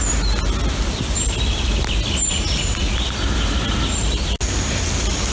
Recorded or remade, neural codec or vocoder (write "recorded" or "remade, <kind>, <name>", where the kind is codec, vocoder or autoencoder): recorded